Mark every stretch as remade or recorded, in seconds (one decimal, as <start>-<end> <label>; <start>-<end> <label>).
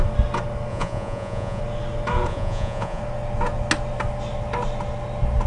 0.0-0.7 recorded; 0.7-1.6 remade; 1.6-2.3 recorded; 2.3-3.0 remade; 3.0-5.5 recorded